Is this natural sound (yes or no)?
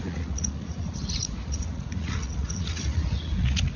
no